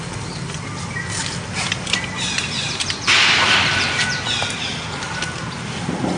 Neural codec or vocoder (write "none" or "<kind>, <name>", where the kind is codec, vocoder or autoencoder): none